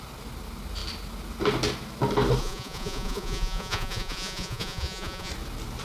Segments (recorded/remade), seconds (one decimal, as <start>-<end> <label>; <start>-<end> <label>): 0.0-2.4 recorded; 2.4-5.3 remade; 5.3-5.8 recorded